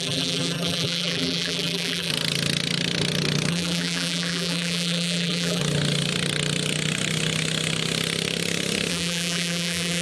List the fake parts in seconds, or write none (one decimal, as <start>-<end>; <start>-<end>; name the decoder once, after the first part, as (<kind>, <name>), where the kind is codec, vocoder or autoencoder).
0.0-2.1 (vocoder, BigVGAN v2); 3.5-5.6; 8.9-10.0